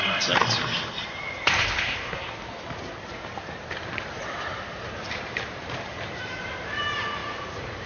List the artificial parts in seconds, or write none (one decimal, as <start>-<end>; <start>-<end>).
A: 4.5-6.8; 7.2-7.9